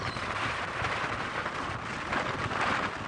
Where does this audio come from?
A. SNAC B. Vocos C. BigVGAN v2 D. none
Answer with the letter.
D